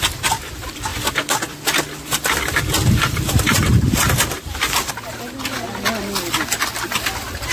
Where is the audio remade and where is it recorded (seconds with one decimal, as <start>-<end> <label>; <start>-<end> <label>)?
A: 0.0-3.0 recorded; 3.0-3.7 remade; 3.7-7.5 recorded